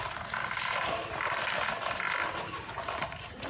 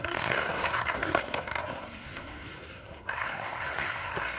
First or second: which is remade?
second